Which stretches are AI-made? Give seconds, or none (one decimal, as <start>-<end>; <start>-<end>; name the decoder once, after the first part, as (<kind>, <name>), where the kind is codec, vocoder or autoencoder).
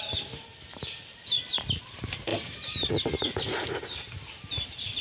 2.3-2.9 (vocoder, BigVGAN v2)